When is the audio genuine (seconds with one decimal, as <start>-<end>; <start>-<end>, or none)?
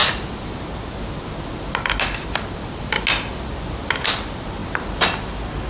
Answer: 0.0-5.7